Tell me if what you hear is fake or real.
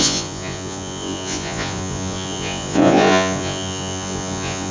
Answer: fake